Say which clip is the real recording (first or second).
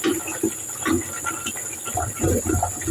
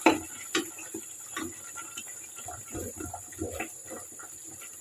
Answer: first